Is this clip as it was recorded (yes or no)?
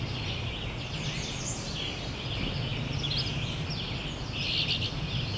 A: yes